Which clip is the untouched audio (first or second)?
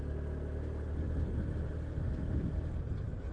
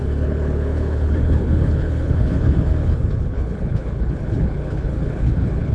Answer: first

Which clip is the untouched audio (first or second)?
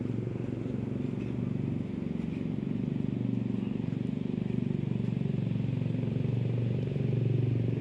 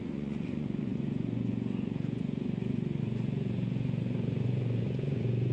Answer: first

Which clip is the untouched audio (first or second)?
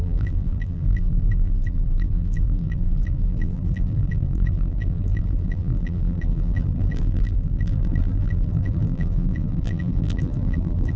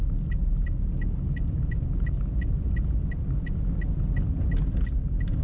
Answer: second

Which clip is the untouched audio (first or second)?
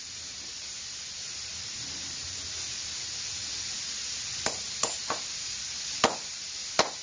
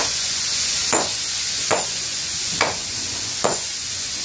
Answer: first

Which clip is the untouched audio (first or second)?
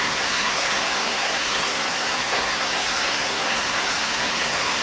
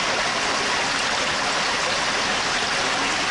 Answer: second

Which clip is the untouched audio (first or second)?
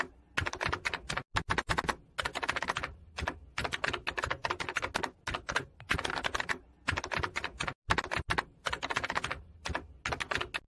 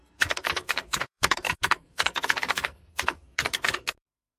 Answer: first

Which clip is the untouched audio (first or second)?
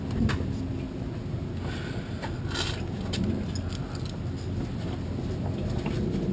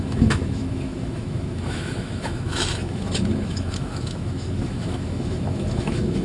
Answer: first